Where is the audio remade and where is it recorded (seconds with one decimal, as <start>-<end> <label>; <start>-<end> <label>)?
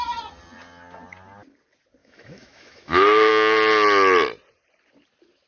0.0-2.0 recorded; 2.0-3.3 remade; 3.3-5.5 recorded